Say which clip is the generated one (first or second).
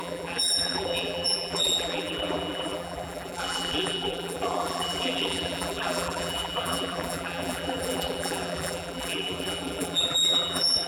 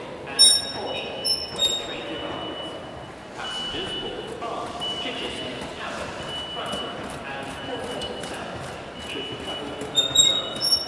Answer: first